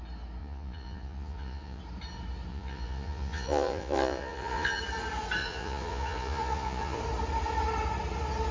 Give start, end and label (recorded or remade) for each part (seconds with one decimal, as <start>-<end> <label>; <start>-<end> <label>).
0.0-0.4 recorded; 0.4-1.8 remade; 1.8-2.5 recorded; 2.5-4.8 remade; 4.8-5.4 recorded; 5.4-7.0 remade; 7.0-8.5 recorded